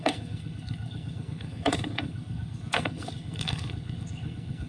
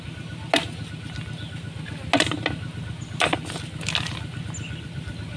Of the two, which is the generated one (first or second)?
first